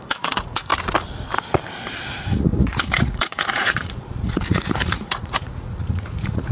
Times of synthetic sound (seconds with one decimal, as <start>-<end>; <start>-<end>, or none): 0.0-0.7; 2.1-6.5